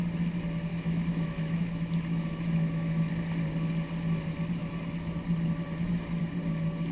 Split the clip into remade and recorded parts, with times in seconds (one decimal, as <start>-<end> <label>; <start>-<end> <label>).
0.0-0.7 recorded; 0.7-3.1 remade; 3.1-6.9 recorded